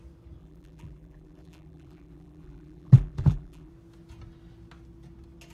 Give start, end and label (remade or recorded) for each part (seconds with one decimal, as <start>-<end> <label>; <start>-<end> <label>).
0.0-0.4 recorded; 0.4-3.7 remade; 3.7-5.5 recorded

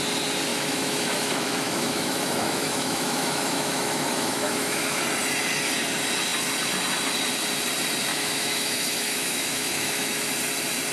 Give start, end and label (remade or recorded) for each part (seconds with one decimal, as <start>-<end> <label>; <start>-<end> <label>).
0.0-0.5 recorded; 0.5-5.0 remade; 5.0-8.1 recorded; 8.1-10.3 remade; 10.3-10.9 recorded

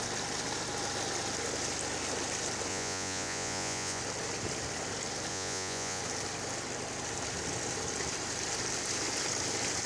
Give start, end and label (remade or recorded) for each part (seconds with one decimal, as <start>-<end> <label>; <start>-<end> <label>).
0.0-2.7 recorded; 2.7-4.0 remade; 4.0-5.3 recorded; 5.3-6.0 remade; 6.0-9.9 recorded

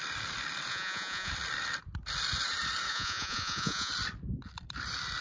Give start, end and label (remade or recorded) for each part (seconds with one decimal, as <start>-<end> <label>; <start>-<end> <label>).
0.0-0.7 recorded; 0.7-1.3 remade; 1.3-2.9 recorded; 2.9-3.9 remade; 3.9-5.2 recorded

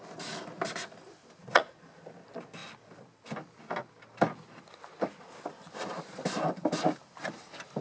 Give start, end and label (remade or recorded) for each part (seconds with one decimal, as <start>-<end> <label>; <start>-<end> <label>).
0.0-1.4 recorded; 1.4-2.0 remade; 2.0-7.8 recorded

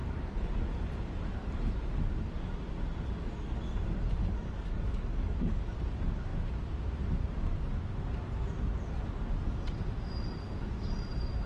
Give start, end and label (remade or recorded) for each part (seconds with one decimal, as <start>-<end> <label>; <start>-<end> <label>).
0.0-4.2 recorded; 4.2-5.6 remade; 5.6-11.5 recorded

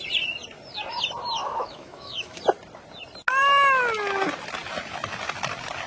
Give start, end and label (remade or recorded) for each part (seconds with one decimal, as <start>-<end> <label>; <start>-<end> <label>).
0.0-1.4 recorded; 1.4-2.4 remade; 2.4-5.9 recorded

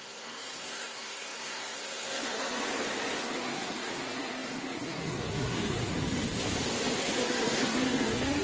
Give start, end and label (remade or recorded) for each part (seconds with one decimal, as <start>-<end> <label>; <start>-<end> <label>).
0.0-2.6 remade; 2.6-3.2 recorded; 3.2-5.9 remade; 5.9-7.0 recorded; 7.0-8.4 remade